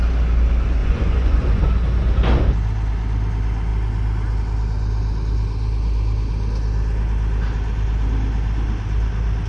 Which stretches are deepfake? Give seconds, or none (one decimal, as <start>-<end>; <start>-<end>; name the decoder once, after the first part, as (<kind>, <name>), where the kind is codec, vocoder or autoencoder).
0.8-1.6 (vocoder, Vocos)